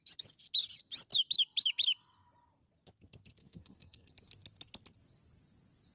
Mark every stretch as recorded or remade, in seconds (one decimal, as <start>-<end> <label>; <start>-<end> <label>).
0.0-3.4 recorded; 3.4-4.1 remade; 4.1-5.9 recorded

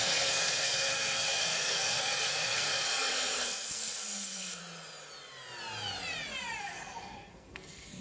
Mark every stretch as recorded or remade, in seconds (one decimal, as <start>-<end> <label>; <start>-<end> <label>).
0.0-4.6 remade; 4.6-6.6 recorded; 6.6-8.0 remade

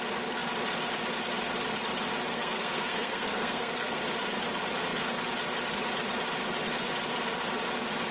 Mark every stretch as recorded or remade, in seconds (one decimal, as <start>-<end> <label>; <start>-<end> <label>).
0.0-2.3 recorded; 2.3-4.0 remade; 4.0-8.1 recorded